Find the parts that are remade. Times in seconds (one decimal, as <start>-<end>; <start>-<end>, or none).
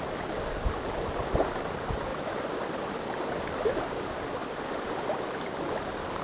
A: 2.1-3.3; 4.4-5.6